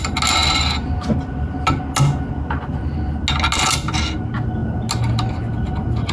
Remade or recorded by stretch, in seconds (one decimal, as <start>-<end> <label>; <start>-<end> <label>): 0.0-6.1 recorded